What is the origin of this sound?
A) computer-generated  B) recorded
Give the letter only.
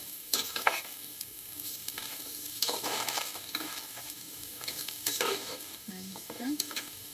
A